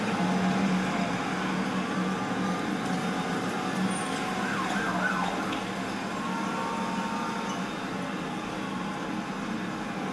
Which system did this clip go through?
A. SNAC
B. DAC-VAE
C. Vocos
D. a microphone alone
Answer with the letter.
D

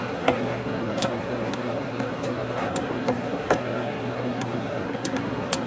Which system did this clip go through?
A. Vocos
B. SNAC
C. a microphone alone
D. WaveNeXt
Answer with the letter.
B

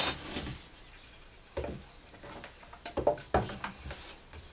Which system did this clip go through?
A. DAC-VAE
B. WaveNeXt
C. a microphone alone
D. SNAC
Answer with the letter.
C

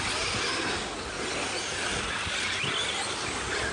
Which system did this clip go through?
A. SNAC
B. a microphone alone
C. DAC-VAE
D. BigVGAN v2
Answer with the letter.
B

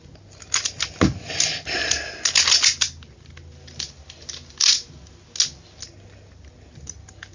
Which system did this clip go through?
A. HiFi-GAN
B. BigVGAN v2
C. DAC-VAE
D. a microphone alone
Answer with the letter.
D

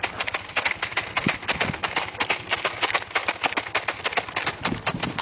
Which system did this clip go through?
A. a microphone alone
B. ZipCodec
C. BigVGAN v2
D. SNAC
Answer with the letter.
A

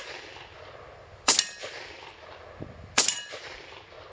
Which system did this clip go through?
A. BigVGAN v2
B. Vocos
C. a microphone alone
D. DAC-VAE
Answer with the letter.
C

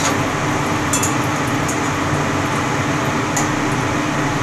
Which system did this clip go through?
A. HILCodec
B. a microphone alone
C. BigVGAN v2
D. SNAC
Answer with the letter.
B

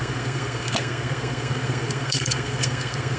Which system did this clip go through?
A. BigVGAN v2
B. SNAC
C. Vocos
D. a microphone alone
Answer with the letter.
B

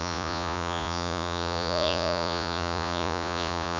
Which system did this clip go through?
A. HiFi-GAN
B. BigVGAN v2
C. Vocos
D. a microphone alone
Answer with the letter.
C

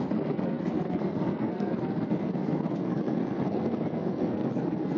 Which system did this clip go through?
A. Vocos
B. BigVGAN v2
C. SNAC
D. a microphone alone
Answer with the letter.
C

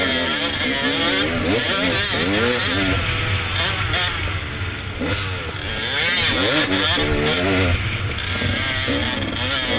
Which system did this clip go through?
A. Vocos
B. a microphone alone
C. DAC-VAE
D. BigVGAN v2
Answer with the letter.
B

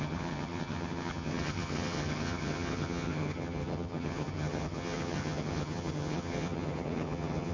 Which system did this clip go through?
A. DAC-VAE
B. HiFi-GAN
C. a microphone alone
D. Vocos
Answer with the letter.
B